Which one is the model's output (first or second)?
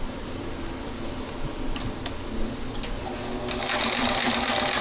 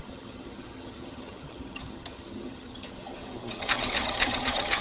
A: second